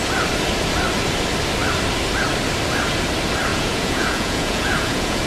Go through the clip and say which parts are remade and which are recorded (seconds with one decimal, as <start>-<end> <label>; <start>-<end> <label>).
0.0-3.5 recorded; 3.5-5.3 remade